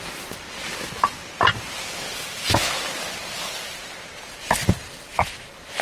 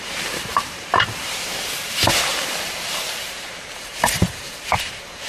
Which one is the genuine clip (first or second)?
first